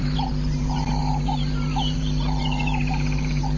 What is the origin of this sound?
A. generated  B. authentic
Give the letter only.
A